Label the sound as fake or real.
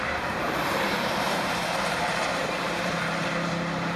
fake